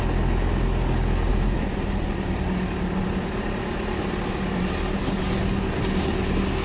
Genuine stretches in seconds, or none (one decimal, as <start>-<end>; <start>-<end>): 0.0-1.3; 5.2-6.6